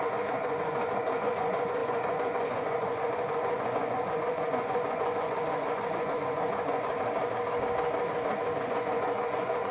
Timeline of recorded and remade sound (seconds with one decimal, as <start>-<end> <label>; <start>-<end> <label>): 0.0-6.9 remade; 6.9-8.6 recorded; 8.6-9.7 remade